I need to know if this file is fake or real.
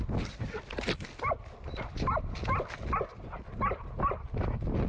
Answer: real